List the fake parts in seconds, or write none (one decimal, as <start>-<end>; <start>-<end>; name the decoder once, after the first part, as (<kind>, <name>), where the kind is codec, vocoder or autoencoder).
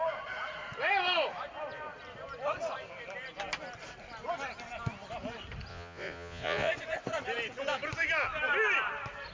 5.7-6.7 (vocoder, Vocos)